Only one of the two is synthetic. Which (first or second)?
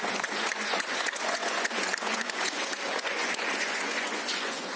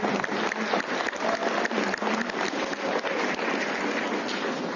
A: first